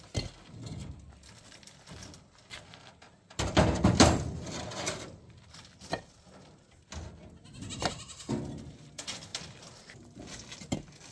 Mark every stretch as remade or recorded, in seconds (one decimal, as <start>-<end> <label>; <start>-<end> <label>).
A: 0.0-11.1 recorded